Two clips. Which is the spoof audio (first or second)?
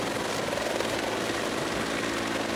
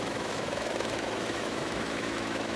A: second